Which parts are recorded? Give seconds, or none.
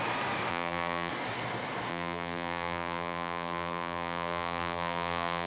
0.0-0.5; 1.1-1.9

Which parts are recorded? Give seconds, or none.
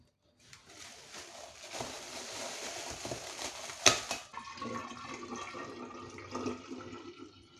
0.0-7.6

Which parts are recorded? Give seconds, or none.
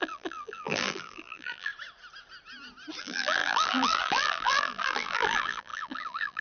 1.7-3.0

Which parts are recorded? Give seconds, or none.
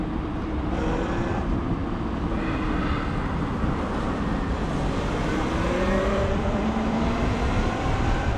1.8-6.0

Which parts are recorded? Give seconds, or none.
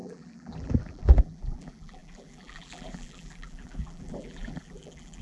none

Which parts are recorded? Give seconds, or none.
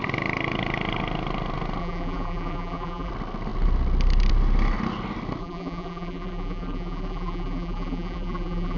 0.0-1.8; 3.1-5.4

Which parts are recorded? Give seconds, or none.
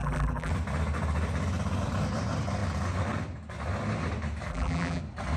0.5-4.5; 5.0-5.4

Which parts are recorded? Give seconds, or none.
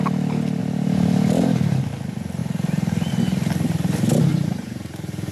0.0-0.6; 1.8-2.4; 3.1-4.3